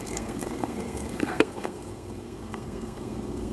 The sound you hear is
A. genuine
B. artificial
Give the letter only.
B